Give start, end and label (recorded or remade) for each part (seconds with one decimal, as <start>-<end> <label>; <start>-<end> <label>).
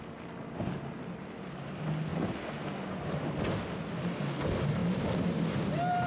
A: 0.0-6.1 recorded